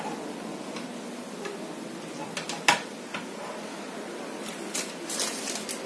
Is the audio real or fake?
real